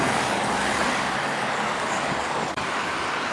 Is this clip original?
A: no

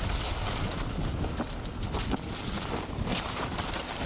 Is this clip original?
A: yes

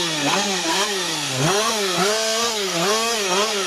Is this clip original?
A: no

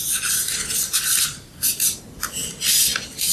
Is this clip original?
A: yes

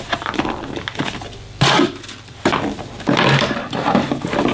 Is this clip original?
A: yes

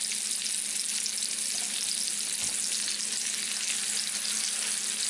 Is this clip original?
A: yes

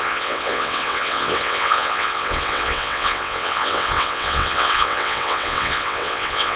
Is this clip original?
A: no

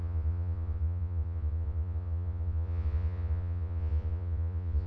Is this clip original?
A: no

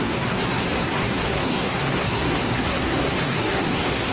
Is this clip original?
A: no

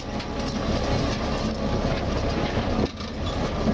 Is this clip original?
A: yes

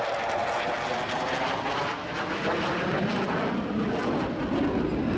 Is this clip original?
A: yes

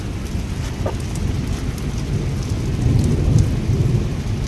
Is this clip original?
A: yes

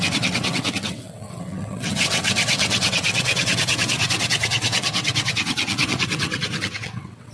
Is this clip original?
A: no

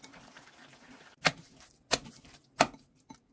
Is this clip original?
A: yes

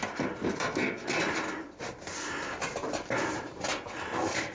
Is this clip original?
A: yes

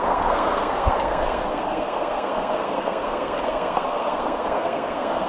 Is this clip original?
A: no